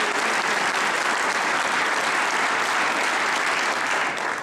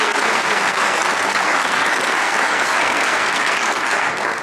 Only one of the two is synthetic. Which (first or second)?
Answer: second